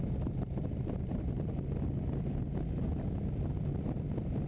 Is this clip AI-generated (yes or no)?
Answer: no